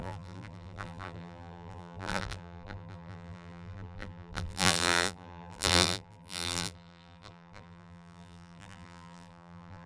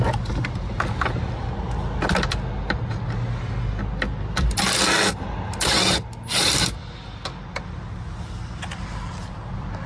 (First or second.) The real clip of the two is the second